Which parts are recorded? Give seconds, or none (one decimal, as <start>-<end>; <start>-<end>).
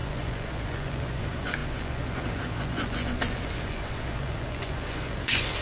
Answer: none